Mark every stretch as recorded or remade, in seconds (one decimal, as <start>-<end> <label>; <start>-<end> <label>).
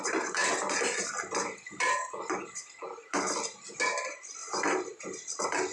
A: 0.0-5.7 remade